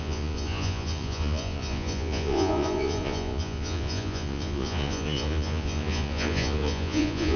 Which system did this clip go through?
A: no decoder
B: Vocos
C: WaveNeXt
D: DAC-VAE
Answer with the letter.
B